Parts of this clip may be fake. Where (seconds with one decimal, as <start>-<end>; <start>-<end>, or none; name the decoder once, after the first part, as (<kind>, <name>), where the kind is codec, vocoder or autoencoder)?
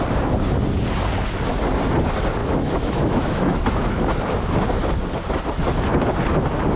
2.4-3.6 (autoencoder, DAC-VAE)